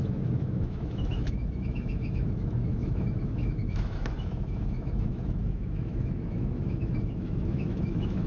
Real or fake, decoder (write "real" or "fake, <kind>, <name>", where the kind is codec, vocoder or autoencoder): fake, autoencoder, DAC-VAE